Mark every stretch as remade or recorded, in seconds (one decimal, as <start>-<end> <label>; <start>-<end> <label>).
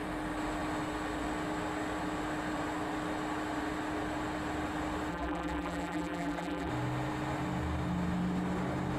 0.0-5.1 recorded; 5.1-6.7 remade; 6.7-9.0 recorded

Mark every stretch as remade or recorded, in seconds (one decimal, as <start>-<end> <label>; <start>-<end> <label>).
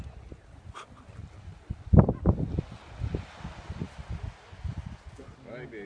0.0-5.9 recorded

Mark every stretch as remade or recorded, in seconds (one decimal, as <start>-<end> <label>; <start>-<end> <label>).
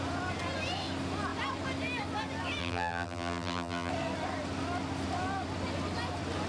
0.0-2.6 recorded; 2.6-3.9 remade; 3.9-6.5 recorded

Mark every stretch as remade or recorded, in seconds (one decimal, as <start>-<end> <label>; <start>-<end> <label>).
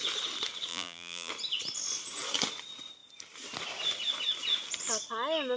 0.0-0.7 recorded; 0.7-1.3 remade; 1.3-5.6 recorded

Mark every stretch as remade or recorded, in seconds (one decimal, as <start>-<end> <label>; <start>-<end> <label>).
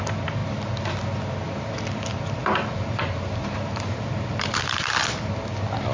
0.0-2.4 recorded; 2.4-4.9 remade; 4.9-5.9 recorded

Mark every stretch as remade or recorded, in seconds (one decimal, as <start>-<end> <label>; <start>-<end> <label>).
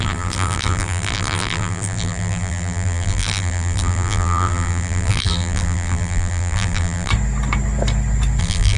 0.0-7.1 remade; 7.1-8.4 recorded; 8.4-8.8 remade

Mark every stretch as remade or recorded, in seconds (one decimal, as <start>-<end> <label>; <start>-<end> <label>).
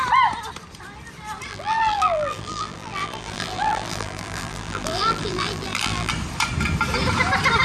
0.0-1.5 recorded; 1.5-6.1 remade; 6.1-7.6 recorded